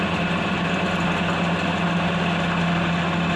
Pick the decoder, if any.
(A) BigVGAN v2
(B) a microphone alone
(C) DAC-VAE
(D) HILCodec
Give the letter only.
B